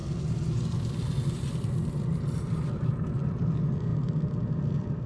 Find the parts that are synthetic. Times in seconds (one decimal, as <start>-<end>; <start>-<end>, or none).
none